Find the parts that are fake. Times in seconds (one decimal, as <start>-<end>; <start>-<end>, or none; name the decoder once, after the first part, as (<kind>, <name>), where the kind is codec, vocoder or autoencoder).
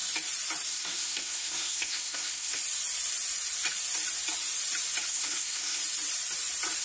0.7-2.6 (codec, SNAC); 5.1-5.8